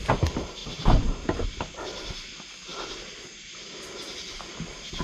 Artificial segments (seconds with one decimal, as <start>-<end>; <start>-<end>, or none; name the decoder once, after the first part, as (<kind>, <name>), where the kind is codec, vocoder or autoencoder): 0.6-1.6 (vocoder, BigVGAN v2)